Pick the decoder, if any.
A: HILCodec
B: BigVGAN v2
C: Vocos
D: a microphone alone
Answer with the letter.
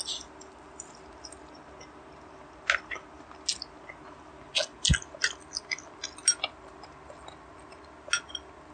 D